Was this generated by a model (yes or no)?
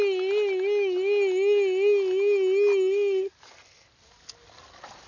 no